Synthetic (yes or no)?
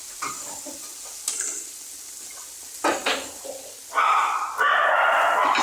no